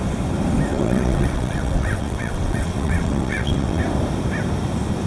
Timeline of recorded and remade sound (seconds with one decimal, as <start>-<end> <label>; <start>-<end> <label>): 0.0-0.7 recorded; 0.7-3.8 remade; 3.8-5.1 recorded